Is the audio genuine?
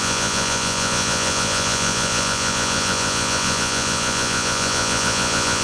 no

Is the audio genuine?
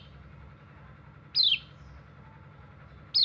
yes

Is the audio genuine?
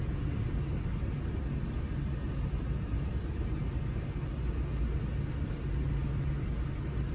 yes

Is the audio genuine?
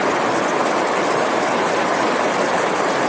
yes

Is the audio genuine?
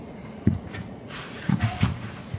no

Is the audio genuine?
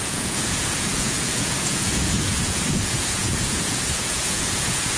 no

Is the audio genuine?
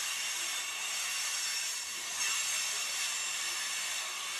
yes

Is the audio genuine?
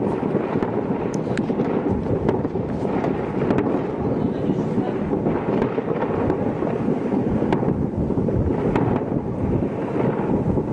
yes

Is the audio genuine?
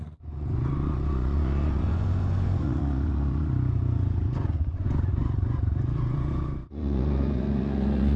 no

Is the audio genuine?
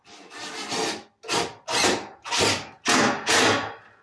yes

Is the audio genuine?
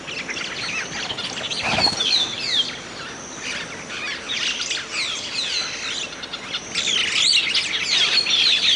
yes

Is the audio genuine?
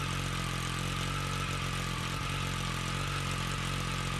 yes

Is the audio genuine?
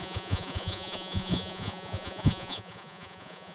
no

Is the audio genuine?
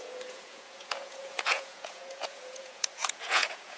no